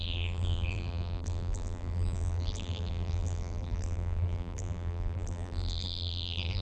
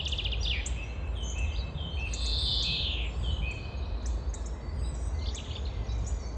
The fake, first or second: first